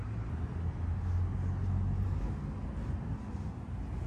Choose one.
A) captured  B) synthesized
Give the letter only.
A